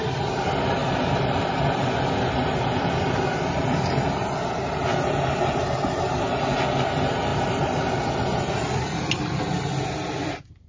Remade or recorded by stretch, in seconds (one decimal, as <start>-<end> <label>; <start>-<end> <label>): 0.0-7.3 recorded; 7.3-8.1 remade; 8.1-10.7 recorded